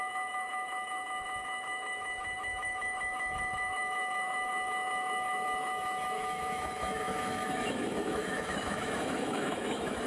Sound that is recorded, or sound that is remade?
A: remade